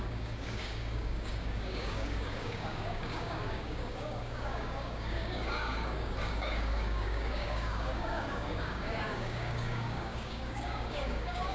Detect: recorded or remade remade